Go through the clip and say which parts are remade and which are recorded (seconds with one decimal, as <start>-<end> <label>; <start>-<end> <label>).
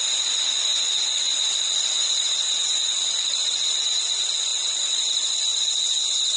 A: 0.0-6.4 remade